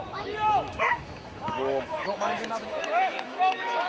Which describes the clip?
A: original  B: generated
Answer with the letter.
B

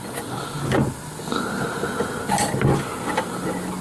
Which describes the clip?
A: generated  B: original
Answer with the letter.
B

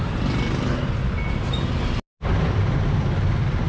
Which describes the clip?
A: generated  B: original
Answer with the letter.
B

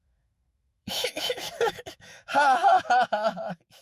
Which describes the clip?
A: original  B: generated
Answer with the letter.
B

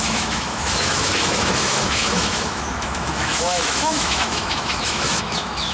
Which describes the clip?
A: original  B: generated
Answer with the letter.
B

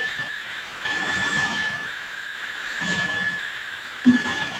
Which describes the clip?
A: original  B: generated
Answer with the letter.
B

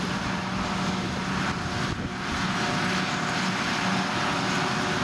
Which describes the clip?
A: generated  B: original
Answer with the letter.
B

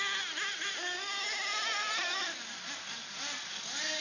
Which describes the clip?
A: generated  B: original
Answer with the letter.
B